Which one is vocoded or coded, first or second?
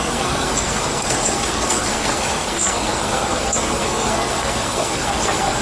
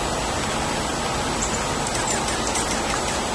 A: first